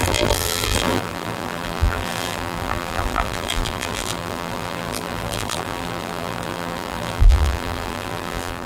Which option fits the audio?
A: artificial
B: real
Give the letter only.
A